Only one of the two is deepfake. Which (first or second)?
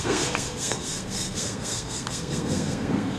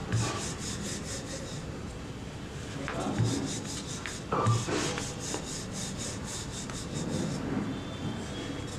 first